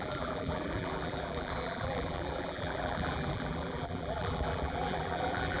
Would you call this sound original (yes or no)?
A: no